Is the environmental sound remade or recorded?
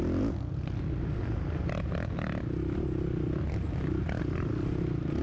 recorded